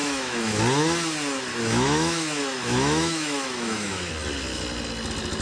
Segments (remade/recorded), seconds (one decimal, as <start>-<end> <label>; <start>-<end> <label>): 0.0-0.6 remade; 0.6-1.5 recorded; 1.5-4.1 remade; 4.1-5.4 recorded